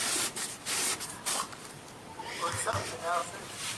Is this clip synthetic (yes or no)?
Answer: yes